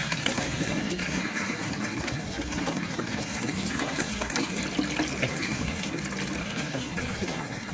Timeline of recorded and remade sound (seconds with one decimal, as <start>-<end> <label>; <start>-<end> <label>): 0.0-4.6 remade; 4.6-5.2 recorded; 5.2-6.0 remade; 6.0-6.4 recorded; 6.4-7.7 remade